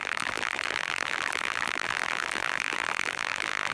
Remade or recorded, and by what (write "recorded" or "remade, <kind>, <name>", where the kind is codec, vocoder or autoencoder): remade, vocoder, BigVGAN v2